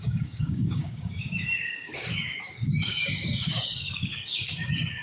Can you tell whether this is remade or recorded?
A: remade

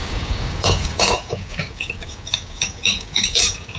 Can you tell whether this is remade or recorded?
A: remade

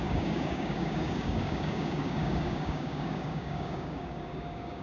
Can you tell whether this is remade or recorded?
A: remade